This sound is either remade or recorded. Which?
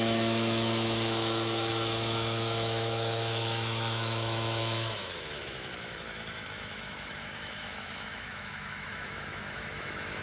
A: remade